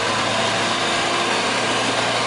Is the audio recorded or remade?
recorded